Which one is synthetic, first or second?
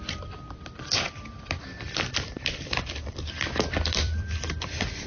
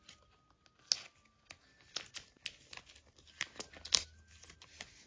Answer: first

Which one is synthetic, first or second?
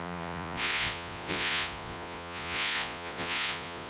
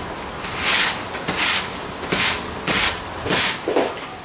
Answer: first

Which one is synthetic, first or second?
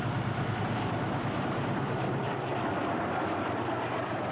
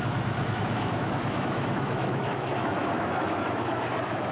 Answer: second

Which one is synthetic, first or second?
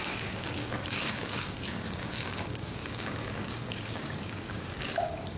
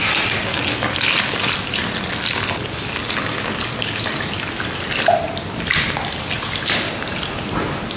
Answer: first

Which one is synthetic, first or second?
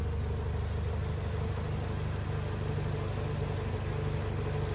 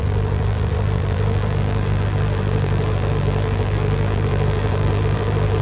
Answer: second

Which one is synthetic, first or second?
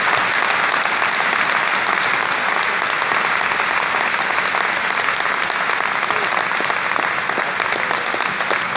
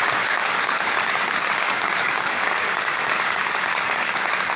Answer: second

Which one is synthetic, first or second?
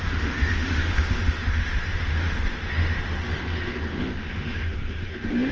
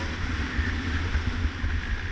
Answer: first